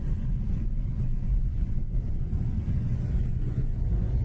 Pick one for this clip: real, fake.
fake